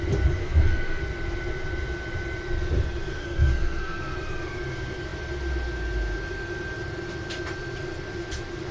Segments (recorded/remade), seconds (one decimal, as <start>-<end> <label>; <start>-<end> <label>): 0.0-0.4 recorded; 0.4-1.0 remade; 1.0-3.1 recorded; 3.1-4.0 remade; 4.0-8.7 recorded